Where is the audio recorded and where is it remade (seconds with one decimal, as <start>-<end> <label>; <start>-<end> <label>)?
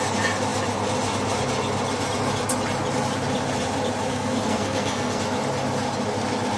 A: 0.0-4.1 recorded; 4.1-5.2 remade; 5.2-6.6 recorded